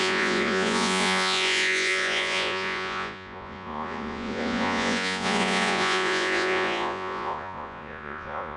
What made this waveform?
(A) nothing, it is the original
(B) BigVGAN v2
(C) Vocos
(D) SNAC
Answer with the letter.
C